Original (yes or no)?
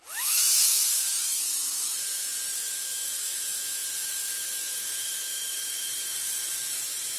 no